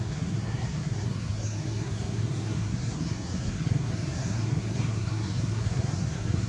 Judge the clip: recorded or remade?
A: remade